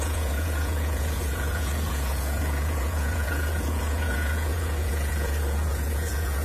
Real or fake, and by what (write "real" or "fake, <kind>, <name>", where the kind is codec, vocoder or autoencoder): fake, vocoder, Vocos